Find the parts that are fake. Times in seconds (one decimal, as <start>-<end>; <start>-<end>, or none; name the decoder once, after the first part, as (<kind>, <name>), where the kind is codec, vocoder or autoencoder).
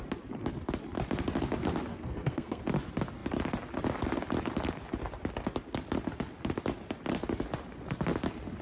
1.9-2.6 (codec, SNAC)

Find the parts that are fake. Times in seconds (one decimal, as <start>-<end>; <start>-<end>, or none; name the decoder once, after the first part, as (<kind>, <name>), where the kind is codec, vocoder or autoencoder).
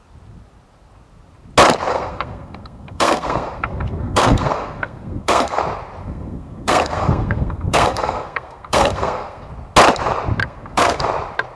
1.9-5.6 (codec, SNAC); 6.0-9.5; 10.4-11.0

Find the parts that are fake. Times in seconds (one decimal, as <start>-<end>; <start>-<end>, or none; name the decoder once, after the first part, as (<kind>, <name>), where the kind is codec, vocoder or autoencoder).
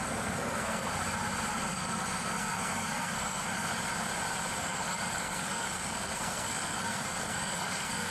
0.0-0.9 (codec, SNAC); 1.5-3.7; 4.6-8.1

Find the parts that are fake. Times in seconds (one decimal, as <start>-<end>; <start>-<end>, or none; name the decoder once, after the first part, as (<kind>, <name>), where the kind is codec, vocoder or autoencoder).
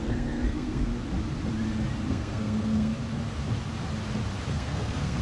0.0-0.9 (codec, SNAC); 2.1-2.9; 4.5-5.2